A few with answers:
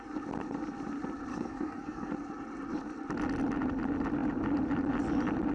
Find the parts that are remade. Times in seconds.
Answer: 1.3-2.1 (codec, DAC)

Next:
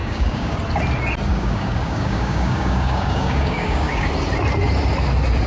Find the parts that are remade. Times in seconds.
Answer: 0.0-0.6 (codec, DAC); 1.3-4.1

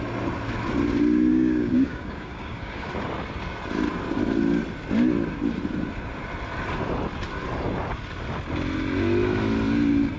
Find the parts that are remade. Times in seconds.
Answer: 1.3-2.9 (codec, DAC)

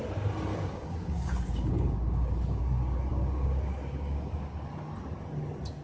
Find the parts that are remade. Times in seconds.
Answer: 0.5-2.6 (codec, DAC); 3.1-4.7